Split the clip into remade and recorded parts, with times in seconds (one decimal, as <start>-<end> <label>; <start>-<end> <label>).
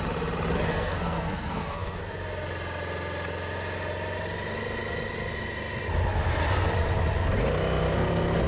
0.0-0.7 recorded; 0.7-2.0 remade; 2.0-8.5 recorded